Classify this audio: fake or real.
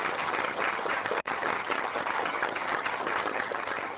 fake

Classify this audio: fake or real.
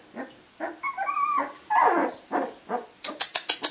real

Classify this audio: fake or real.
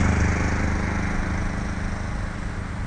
real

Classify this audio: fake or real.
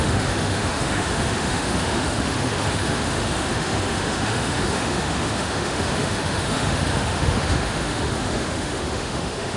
fake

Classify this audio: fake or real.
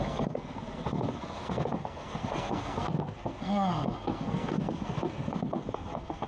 fake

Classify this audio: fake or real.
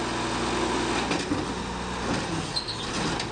real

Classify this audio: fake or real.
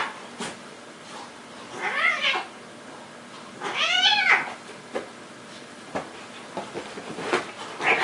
real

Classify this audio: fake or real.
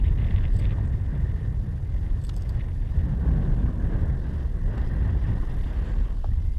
real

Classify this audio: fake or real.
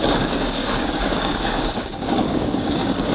fake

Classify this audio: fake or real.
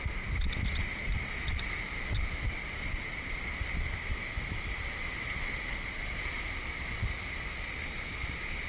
real